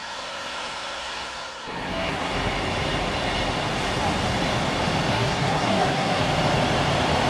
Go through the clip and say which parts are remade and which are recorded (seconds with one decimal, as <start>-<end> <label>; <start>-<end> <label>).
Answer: 0.0-2.3 remade; 2.3-5.1 recorded; 5.1-6.2 remade; 6.2-7.3 recorded